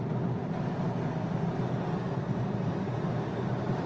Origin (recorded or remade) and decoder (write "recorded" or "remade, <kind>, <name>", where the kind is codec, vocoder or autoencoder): recorded